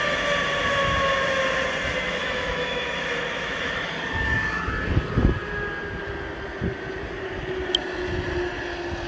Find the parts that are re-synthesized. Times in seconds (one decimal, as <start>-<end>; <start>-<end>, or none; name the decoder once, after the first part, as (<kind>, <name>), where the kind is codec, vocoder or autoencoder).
2.2-3.9 (autoencoder, DAC-VAE)